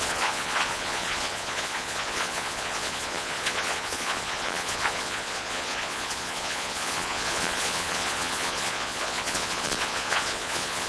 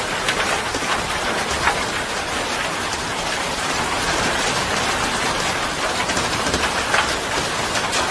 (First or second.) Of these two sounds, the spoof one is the first